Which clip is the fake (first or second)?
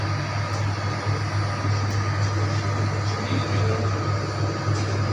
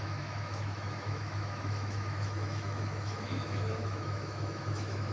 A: second